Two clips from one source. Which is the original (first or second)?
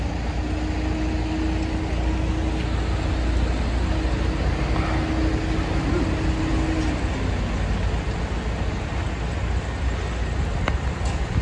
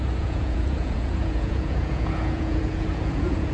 first